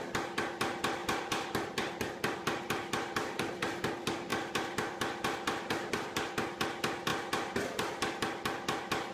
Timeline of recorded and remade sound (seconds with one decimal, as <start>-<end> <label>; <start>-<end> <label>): 0.0-1.0 recorded; 1.0-3.8 remade; 3.8-4.3 recorded; 4.3-6.3 remade; 6.3-9.1 recorded